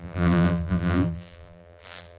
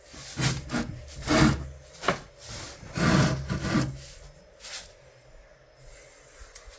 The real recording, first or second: second